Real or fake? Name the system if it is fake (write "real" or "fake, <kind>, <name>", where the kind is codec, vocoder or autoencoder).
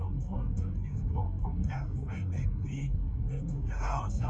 fake, codec, SNAC